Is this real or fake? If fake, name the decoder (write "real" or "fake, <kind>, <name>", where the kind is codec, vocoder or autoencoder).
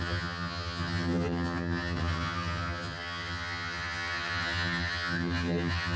fake, vocoder, HiFi-GAN